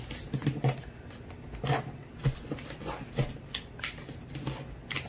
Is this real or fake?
real